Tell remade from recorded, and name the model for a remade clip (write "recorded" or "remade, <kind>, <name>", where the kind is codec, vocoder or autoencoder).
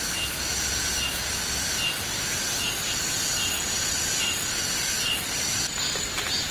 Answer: recorded